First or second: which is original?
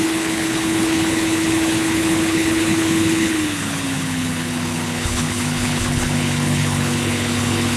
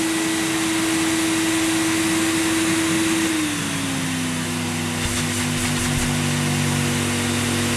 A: second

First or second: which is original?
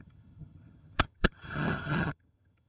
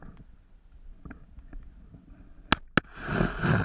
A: second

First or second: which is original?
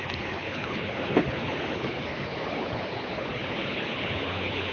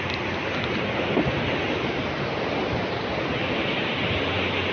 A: second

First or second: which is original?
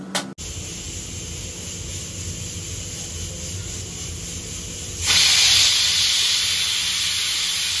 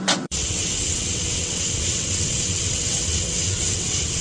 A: first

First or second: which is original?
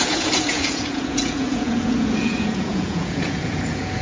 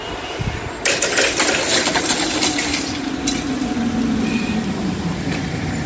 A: second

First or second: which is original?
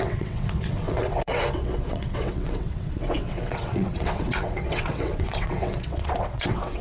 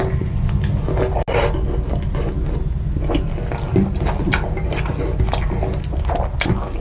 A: second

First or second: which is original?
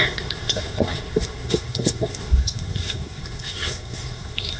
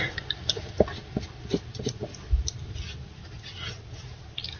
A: second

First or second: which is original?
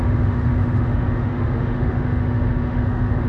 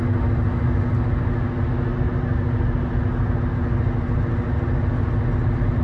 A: second